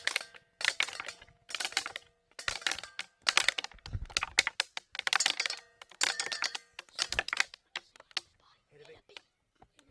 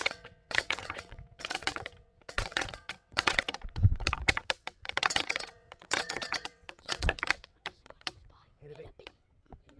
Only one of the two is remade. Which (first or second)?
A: second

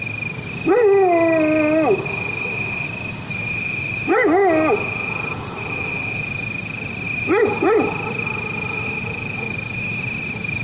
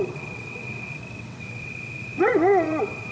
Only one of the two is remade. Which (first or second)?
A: second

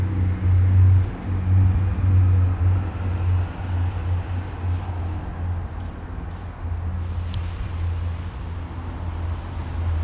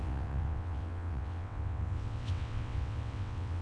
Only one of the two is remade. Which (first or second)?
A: second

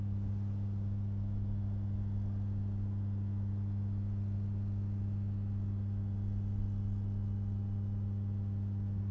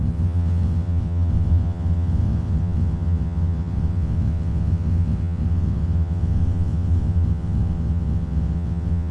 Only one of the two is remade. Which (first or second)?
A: second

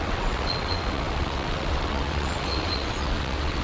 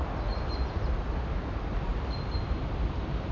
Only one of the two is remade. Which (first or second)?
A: first